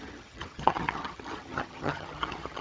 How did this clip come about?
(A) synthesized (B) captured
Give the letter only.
A